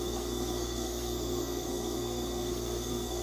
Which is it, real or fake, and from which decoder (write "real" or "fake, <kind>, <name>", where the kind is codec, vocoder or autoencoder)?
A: fake, codec, SNAC